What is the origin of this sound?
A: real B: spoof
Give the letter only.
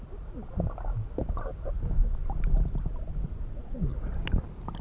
A